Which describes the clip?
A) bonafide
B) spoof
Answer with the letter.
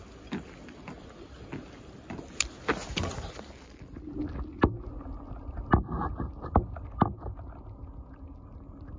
A